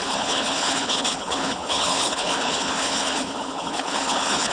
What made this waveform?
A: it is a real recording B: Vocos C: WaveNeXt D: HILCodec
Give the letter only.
D